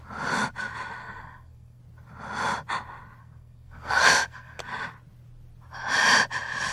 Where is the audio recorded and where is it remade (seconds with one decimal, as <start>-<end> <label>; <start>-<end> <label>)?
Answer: 0.0-1.0 recorded; 1.0-1.8 remade; 1.8-3.2 recorded; 3.2-4.6 remade; 4.6-6.7 recorded